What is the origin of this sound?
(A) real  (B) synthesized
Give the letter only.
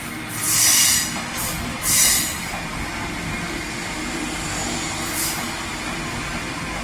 A